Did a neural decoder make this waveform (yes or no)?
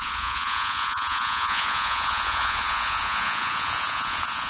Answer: yes